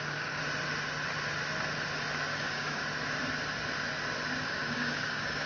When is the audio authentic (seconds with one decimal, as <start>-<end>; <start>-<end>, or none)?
0.4-2.4; 2.8-4.5